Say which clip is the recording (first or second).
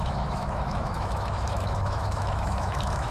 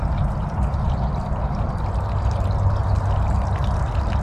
second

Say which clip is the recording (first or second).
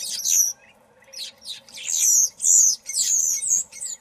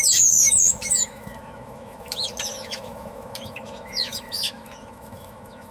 first